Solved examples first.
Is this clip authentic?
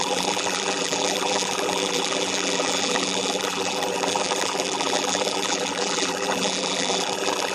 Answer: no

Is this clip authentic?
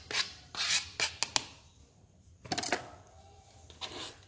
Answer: yes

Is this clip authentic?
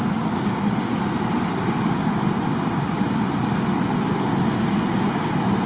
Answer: yes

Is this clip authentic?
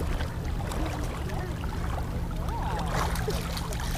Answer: yes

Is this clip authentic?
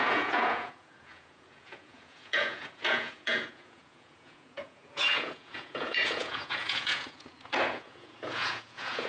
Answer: no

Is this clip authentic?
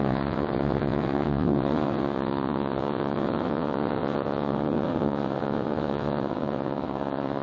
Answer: no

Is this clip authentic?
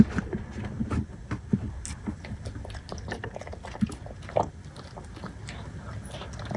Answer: yes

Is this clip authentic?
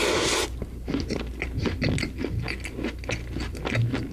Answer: yes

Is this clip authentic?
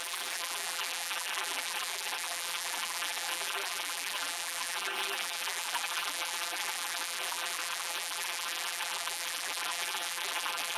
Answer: no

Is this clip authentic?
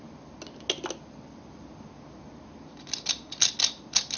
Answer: yes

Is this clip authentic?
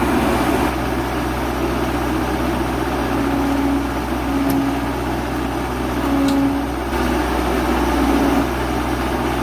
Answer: yes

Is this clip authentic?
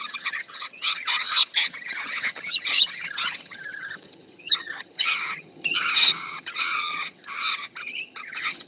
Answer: no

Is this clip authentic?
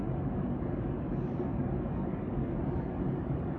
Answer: no